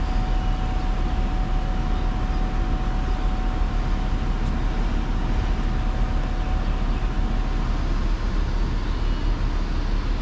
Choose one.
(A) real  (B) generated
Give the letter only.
A